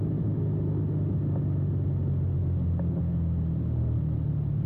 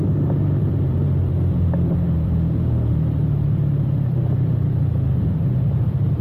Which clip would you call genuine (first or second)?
first